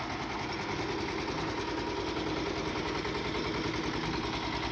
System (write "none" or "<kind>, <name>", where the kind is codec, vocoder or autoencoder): none